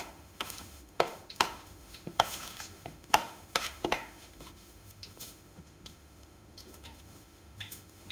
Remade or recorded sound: remade